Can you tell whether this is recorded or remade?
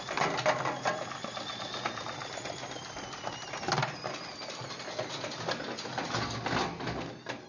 recorded